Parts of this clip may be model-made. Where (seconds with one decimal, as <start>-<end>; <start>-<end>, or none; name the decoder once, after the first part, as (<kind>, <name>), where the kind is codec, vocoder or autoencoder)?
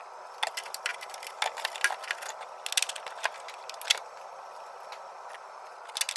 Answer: none